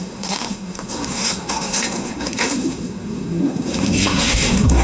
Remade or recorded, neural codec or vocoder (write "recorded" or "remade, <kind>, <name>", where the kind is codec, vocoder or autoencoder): remade, codec, SNAC